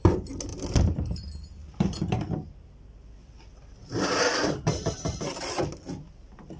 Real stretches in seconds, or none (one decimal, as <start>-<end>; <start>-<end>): 0.0-0.5; 1.1-1.6; 5.6-6.6